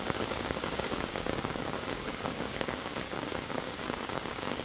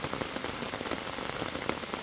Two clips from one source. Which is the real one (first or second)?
second